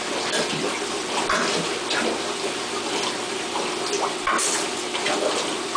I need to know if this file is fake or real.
real